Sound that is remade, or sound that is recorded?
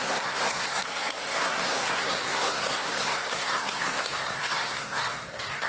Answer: remade